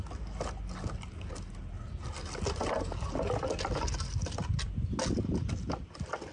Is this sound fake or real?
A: real